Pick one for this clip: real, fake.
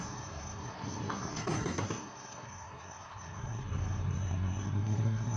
fake